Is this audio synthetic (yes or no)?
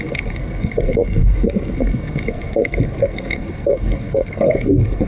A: yes